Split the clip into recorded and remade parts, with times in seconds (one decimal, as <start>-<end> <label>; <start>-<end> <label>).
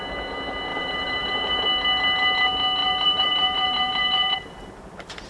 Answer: 0.0-0.7 recorded; 0.7-1.6 remade; 1.6-2.8 recorded; 2.8-4.7 remade; 4.7-5.3 recorded